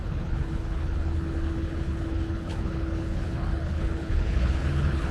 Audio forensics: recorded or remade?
remade